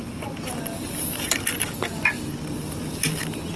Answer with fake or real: real